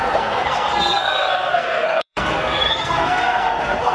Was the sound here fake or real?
fake